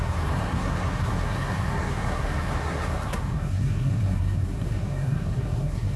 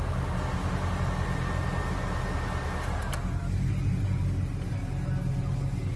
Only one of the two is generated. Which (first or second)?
first